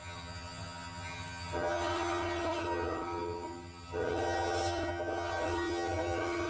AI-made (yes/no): yes